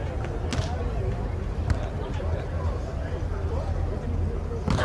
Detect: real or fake real